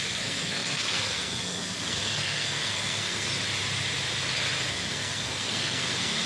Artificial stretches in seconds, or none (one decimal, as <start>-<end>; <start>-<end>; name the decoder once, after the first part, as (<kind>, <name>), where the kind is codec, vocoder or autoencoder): 0.0-3.3 (codec, SNAC); 4.7-6.3